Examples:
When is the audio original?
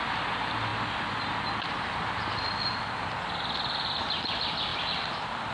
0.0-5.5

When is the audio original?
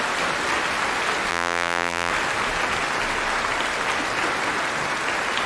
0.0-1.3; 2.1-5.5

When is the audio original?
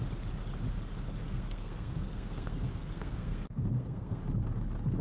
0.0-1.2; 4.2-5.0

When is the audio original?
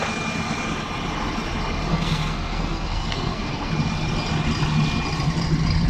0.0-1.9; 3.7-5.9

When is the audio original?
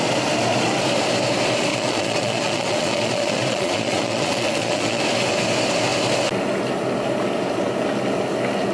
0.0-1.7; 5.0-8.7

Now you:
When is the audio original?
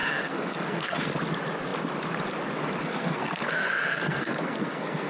1.1-2.8